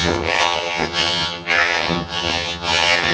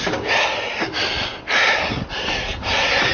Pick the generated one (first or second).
first